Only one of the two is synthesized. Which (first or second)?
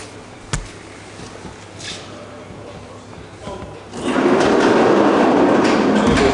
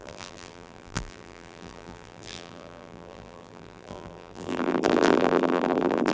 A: second